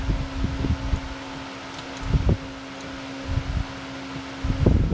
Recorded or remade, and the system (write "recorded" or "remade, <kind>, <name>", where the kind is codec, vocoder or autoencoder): recorded